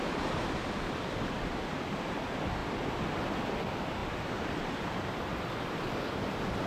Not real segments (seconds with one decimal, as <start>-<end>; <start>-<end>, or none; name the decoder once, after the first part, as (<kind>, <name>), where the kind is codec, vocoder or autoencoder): none